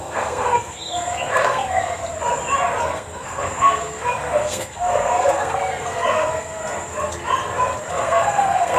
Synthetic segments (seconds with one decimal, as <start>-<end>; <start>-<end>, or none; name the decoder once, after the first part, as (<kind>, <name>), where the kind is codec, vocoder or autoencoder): 0.0-2.0 (codec, SNAC); 2.8-6.6; 7.9-8.8